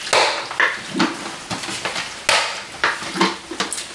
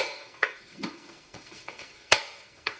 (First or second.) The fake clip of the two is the second